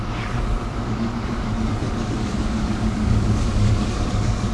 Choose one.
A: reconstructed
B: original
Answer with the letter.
A